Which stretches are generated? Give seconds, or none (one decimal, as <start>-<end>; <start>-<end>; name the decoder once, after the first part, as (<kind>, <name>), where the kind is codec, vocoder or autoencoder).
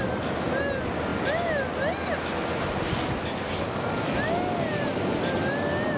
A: none